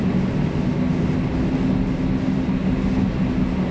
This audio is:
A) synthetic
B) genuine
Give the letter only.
B